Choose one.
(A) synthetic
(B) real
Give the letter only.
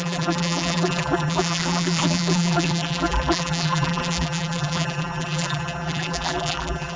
A